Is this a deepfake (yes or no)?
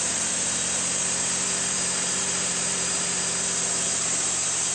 yes